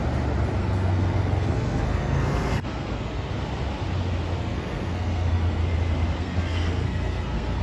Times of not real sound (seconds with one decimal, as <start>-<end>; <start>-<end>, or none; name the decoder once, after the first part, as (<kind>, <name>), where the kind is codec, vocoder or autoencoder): 0.6-3.3 (codec, SNAC); 4.4-5.6; 6.2-7.6

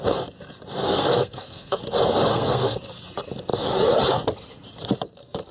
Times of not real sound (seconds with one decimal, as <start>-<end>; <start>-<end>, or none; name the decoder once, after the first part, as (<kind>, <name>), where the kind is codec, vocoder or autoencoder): 0.8-1.8 (codec, SNAC); 2.3-2.8